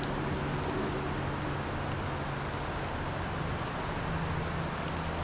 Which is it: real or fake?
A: real